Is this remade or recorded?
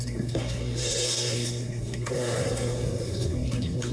remade